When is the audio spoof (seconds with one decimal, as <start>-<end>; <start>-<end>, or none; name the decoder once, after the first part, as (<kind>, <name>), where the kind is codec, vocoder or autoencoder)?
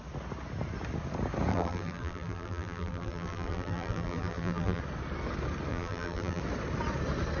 1.5-4.8 (vocoder, BigVGAN v2); 5.7-6.4